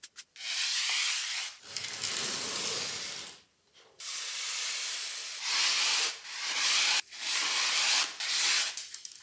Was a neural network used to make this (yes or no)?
no